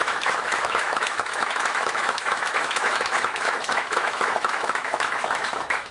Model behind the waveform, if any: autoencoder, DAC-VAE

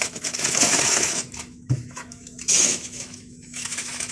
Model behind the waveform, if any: autoencoder, DAC-VAE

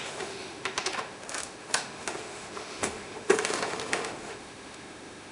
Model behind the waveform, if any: autoencoder, DAC-VAE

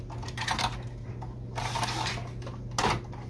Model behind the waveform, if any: none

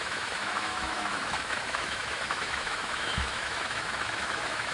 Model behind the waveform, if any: autoencoder, DAC-VAE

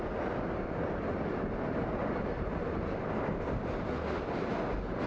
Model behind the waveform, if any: none